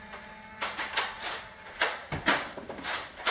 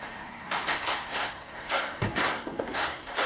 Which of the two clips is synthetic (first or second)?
second